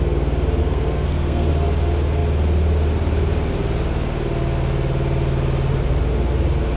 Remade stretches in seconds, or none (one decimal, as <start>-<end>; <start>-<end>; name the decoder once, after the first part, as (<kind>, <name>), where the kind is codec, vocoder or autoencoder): 0.6-1.5 (codec, SNAC)